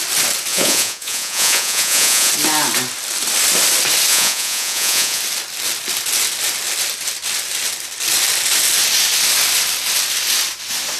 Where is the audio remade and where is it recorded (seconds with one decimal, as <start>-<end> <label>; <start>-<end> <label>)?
0.0-0.5 recorded; 0.5-2.3 remade; 2.3-4.1 recorded; 4.1-5.2 remade; 5.2-11.0 recorded